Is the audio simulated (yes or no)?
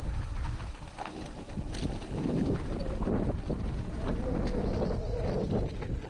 no